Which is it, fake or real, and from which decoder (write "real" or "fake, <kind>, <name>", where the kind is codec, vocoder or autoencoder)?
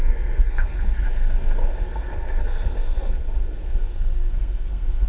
fake, codec, SNAC